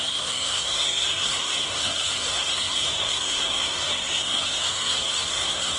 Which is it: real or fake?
fake